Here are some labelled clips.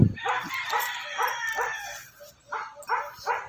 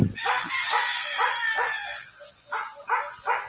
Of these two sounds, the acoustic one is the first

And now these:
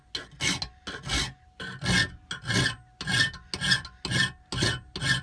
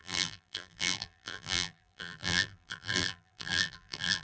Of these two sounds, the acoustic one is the first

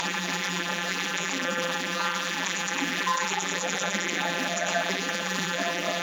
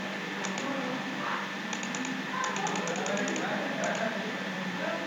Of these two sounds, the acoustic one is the second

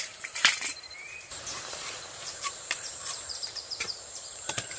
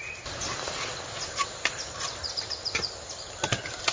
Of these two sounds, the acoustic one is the second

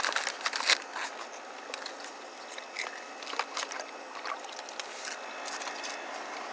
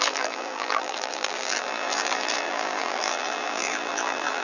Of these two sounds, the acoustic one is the first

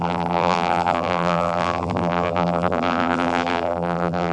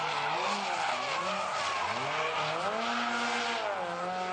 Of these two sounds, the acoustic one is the second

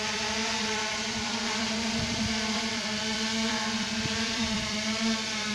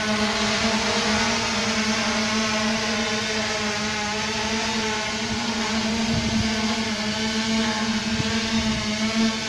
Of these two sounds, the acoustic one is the second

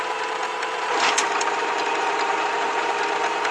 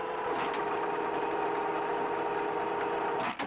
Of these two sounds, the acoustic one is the second